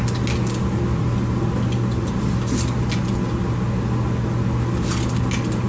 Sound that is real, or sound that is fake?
real